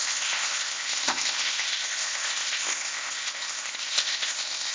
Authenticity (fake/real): fake